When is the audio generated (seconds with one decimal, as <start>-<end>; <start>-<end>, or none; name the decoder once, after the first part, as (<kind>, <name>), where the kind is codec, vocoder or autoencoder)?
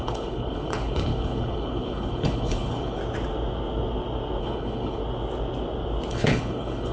0.0-3.0 (codec, HILCodec); 4.4-5.0; 6.1-6.9